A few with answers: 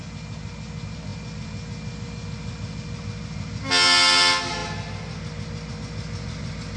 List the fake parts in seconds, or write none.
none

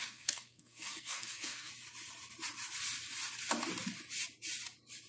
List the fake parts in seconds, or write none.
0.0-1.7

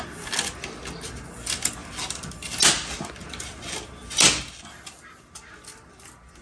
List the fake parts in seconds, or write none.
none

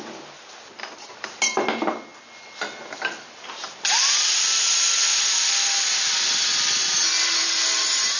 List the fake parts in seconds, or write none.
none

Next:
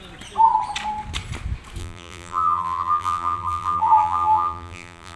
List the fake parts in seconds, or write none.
1.8-5.2

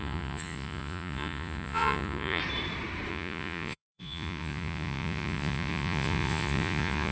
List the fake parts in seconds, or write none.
0.0-2.4; 3.1-7.1

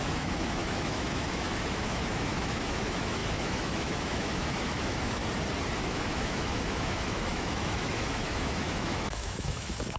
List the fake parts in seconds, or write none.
0.0-5.2; 5.8-10.0